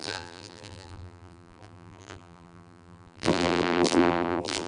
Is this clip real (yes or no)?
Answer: no